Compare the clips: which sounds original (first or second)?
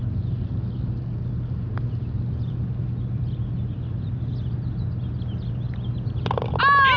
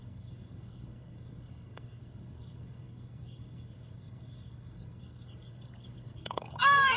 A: first